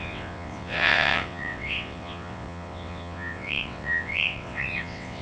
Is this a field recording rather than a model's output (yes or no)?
no